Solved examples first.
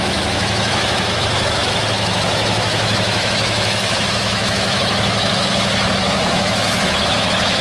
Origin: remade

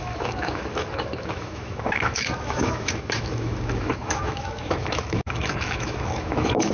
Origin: remade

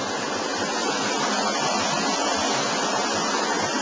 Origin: recorded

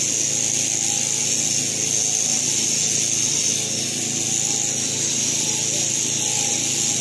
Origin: recorded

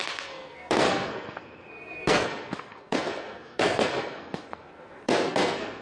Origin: remade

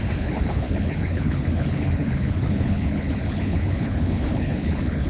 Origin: remade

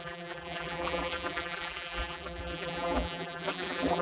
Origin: remade